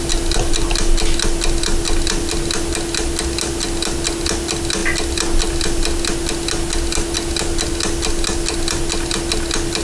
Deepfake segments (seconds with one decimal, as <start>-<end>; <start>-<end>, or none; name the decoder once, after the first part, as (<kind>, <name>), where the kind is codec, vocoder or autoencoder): none

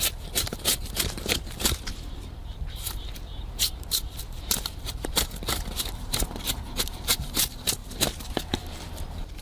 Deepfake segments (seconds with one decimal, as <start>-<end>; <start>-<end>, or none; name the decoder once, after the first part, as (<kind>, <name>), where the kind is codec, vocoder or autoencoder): 0.0-9.4 (vocoder, BigVGAN v2)

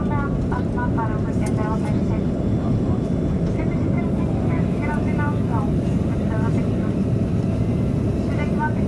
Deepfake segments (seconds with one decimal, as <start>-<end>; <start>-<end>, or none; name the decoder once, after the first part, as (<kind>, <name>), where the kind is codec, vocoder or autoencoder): none

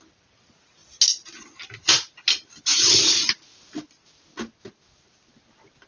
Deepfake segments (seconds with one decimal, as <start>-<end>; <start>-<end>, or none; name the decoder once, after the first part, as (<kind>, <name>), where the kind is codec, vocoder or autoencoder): none

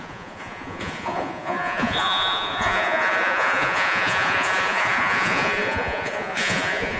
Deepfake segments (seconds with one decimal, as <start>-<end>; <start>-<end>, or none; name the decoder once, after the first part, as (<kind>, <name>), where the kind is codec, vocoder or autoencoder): 0.0-7.0 (vocoder, Vocos)

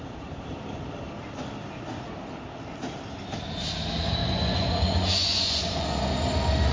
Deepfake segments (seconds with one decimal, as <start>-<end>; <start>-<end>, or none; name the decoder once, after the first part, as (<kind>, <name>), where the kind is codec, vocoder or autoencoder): 4.2-6.0 (vocoder, Vocos)

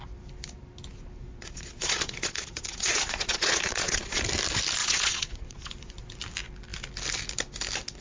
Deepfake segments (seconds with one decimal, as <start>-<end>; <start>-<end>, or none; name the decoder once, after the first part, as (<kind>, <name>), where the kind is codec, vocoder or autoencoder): 1.3-4.2 (vocoder, Vocos); 4.8-5.7